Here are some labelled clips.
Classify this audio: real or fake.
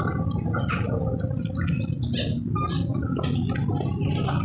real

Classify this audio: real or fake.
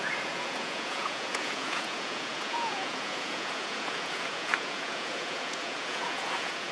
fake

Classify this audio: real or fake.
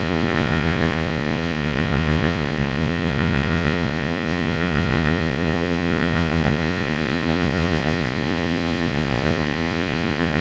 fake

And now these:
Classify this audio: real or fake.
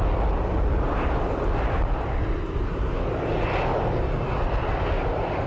real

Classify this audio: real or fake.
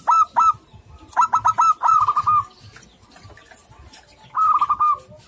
real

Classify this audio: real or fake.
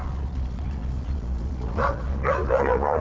fake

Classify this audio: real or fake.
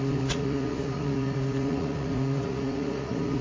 fake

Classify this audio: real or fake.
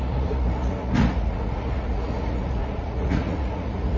fake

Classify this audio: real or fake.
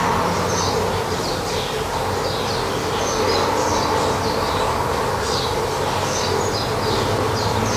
real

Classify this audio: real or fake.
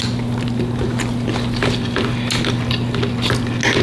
real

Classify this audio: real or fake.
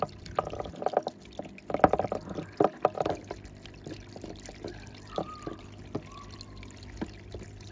real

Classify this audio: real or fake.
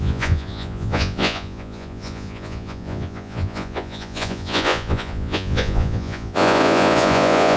fake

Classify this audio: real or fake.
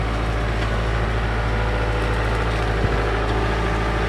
real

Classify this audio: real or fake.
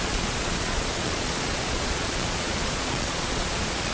fake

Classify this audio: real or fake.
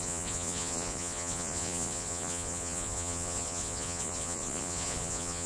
fake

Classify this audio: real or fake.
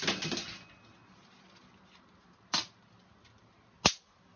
real